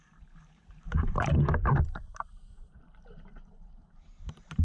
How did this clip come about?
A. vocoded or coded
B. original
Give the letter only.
A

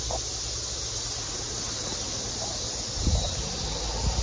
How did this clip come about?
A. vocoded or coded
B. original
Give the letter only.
B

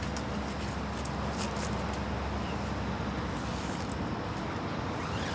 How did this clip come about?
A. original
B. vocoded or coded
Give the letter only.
A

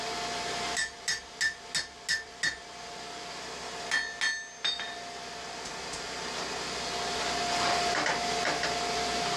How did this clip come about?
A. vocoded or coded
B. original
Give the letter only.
B